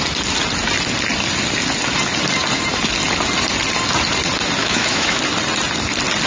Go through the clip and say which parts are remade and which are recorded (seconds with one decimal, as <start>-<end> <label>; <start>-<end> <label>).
0.0-4.6 recorded; 4.6-5.2 remade; 5.2-6.3 recorded